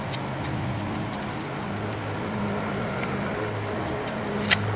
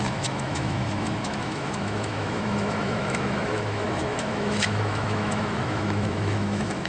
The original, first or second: first